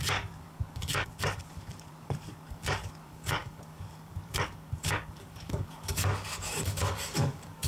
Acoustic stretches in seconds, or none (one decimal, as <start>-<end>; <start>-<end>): none